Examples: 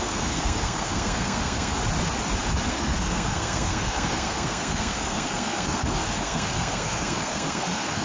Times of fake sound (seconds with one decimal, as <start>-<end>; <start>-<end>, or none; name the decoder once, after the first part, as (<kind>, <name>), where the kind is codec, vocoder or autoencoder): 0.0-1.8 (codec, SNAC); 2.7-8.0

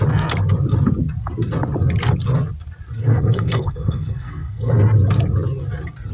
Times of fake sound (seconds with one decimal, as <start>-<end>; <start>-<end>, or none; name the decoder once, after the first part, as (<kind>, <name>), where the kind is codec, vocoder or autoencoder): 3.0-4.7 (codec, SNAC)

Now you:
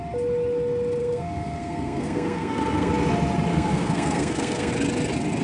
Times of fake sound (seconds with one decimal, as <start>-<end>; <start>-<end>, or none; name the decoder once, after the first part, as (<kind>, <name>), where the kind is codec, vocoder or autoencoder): 1.0-2.9 (codec, SNAC); 3.5-4.7

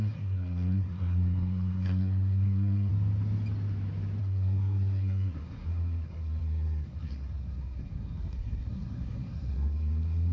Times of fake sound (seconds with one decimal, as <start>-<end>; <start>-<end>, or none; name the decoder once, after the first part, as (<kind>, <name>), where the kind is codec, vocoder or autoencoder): 0.0-2.9 (codec, SNAC); 4.2-10.3

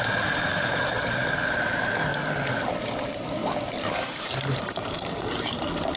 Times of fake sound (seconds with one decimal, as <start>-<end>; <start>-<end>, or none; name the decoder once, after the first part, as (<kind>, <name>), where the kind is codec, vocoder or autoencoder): 0.0-2.1 (vocoder, BigVGAN v2); 2.8-6.0